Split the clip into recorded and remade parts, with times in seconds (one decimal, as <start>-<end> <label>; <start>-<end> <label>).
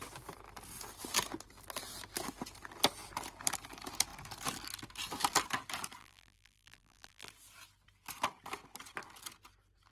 0.0-6.0 recorded; 6.0-7.3 remade; 7.3-9.9 recorded